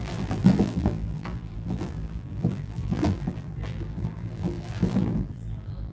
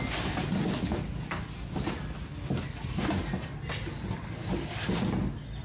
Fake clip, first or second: first